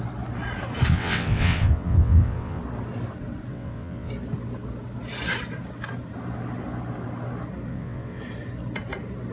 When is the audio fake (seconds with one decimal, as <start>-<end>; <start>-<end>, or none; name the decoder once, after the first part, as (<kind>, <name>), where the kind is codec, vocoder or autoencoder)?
0.9-2.6 (vocoder, WaveNeXt); 3.5-4.1; 7.7-8.2